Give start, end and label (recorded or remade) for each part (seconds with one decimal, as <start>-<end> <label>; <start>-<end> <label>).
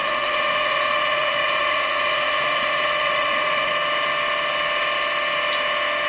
0.0-3.7 remade; 3.7-6.1 recorded